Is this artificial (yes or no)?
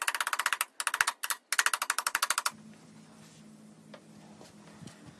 no